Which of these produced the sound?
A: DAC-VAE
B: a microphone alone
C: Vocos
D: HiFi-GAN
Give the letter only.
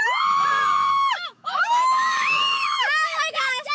A